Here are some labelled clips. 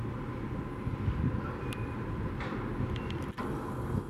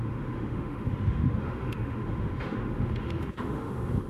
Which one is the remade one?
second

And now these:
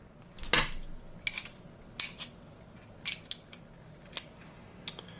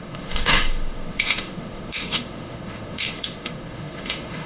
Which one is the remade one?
second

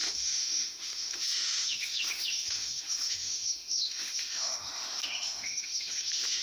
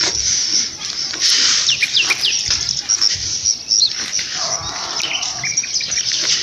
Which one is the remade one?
first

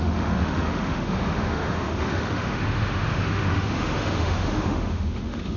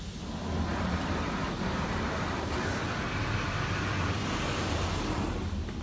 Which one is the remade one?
first